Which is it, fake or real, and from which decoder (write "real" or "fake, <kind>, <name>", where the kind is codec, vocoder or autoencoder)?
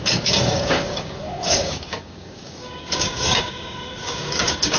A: fake, codec, DAC